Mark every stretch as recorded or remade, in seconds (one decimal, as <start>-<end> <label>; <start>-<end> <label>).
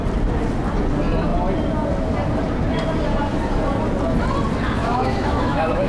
0.0-4.8 recorded; 4.8-5.9 remade